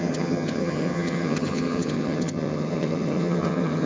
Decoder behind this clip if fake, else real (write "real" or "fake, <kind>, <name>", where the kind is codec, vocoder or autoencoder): fake, vocoder, HiFi-GAN